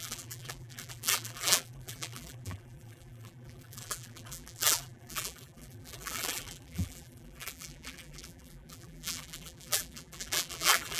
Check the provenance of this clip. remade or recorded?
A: remade